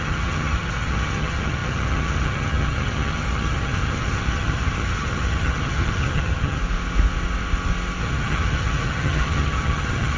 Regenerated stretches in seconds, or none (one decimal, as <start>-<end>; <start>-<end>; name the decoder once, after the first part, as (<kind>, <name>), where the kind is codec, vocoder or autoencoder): 0.0-6.6 (vocoder, HiFi-GAN); 8.0-10.2